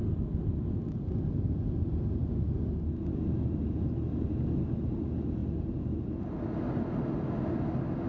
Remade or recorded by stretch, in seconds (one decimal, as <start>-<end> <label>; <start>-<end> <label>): 0.0-8.1 recorded